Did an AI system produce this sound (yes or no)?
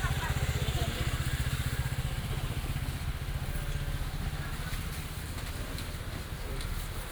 yes